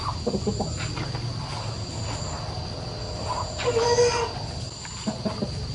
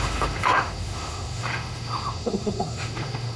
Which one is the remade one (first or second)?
second